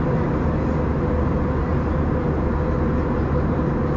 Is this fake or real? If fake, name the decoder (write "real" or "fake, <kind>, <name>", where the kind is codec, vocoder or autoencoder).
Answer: real